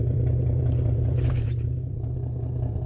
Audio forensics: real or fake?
fake